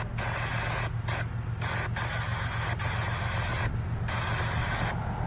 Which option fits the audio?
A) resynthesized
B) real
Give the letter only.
B